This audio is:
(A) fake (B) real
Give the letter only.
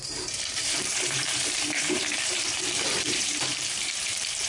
A